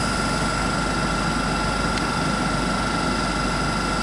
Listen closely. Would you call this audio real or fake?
real